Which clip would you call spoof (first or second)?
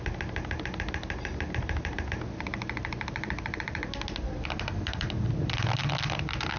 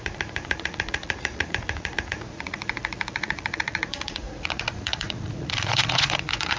second